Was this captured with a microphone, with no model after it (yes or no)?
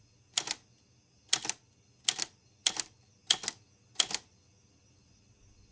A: yes